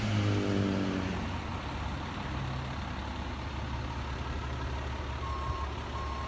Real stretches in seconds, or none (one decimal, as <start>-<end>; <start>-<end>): 0.0-6.3